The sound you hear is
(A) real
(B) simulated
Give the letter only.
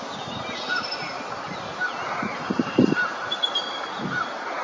B